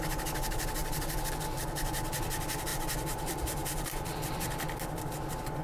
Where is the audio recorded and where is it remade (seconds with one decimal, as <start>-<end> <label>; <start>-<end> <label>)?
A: 0.0-0.8 recorded; 0.8-1.3 remade; 1.3-2.7 recorded; 2.7-5.1 remade; 5.1-5.6 recorded